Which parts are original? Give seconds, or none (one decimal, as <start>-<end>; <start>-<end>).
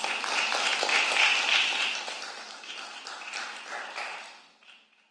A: 0.0-5.1